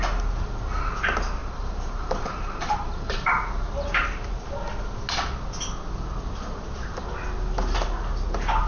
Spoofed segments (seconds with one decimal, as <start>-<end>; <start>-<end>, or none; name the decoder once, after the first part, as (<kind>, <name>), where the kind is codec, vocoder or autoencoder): 1.4-3.7 (vocoder, BigVGAN v2)